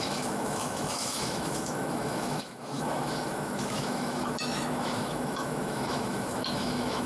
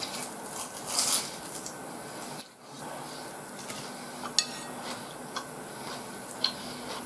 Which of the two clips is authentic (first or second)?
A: second